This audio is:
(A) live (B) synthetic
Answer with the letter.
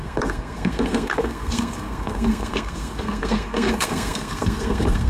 B